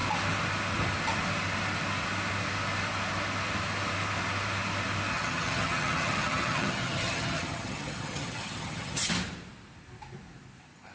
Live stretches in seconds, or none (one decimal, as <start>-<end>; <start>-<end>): 0.0-5.1; 9.1-10.9